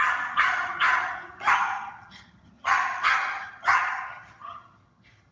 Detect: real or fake fake